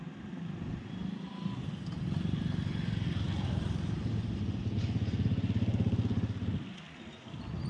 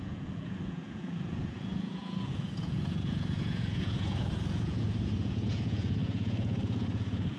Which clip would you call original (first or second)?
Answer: first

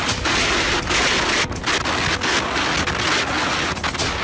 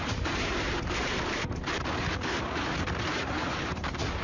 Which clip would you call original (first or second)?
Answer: first